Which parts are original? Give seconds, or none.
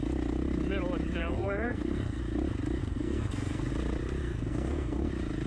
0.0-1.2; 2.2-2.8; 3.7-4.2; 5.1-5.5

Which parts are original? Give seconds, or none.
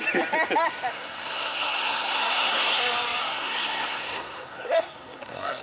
0.0-0.9; 2.8-3.2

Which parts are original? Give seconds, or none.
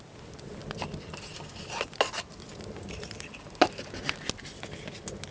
0.0-5.3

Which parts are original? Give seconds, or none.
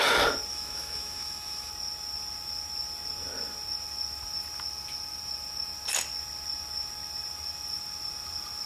0.0-0.5; 1.7-8.7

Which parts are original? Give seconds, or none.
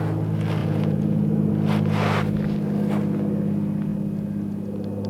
0.0-0.6; 1.5-5.1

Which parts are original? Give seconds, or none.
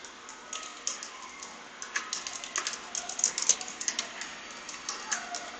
0.0-5.6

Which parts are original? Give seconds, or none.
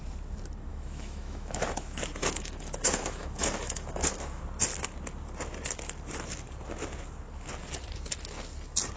0.0-0.7; 4.4-9.0